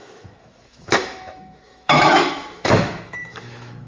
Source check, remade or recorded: remade